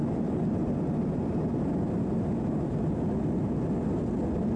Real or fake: real